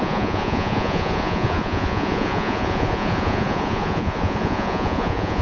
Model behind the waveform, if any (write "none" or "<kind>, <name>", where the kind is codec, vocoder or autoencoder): vocoder, Vocos